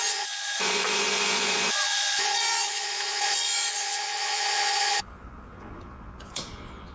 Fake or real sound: fake